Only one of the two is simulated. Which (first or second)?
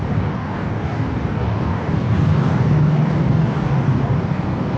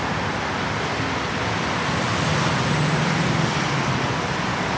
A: first